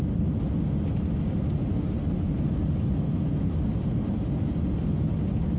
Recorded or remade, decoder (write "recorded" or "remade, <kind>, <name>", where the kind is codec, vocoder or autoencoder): recorded